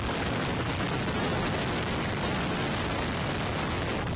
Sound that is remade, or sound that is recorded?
recorded